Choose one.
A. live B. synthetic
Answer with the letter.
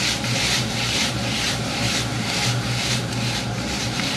B